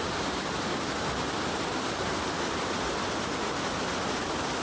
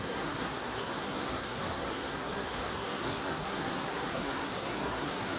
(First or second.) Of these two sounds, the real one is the first